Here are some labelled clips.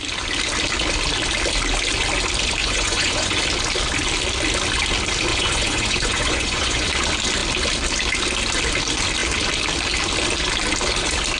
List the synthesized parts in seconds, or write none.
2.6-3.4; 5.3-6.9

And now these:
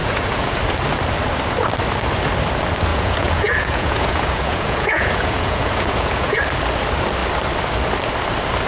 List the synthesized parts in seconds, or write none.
0.0-0.6; 2.9-6.4

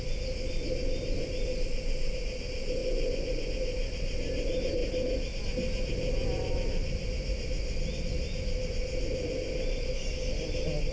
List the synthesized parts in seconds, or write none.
2.8-3.5

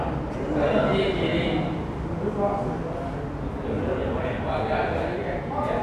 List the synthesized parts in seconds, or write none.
none

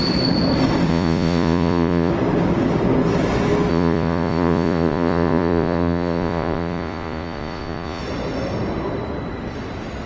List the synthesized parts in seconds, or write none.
0.9-2.1; 3.7-8.0